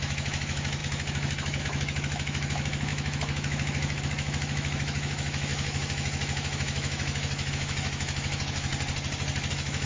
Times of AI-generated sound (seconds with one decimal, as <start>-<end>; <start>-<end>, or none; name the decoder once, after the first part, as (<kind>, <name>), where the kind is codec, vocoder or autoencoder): 0.0-8.7 (autoencoder, DAC-VAE); 9.5-9.9